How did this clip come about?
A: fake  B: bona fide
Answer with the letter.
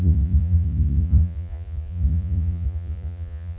A